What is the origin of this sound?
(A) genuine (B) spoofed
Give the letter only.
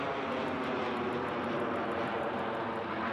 A